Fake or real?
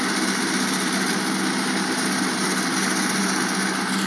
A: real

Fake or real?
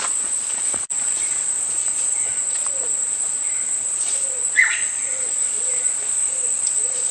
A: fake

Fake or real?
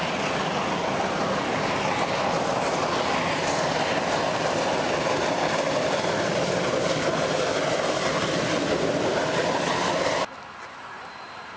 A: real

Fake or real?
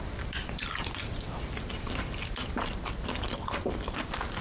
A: real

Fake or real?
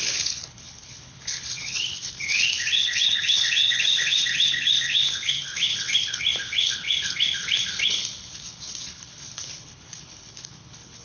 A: fake